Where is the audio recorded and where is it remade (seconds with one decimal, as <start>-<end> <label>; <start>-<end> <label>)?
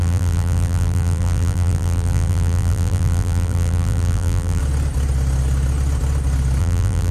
0.0-4.6 remade; 4.6-6.6 recorded; 6.6-7.1 remade